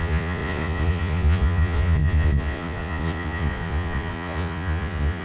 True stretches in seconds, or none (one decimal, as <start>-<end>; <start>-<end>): none